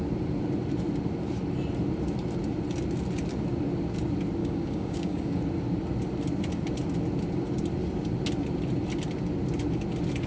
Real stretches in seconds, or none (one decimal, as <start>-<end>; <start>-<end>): 0.0-4.4; 5.4-10.3